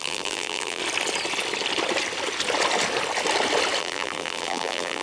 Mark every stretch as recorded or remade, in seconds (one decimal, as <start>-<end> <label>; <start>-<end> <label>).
0.0-0.8 remade; 0.8-3.8 recorded; 3.8-5.0 remade